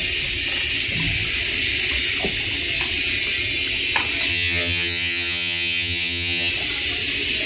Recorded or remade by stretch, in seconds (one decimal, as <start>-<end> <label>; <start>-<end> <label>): 0.0-4.3 recorded; 4.3-6.5 remade; 6.5-7.5 recorded